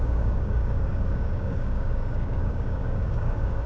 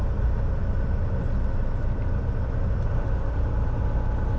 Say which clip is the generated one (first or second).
first